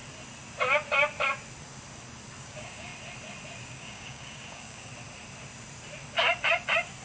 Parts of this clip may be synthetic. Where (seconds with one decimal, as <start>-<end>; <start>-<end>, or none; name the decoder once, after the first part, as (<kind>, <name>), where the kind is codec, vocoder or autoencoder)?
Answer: 2.4-2.9 (codec, DAC); 3.6-4.9